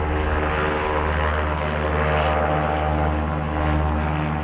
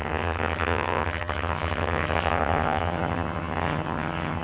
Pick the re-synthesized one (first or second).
second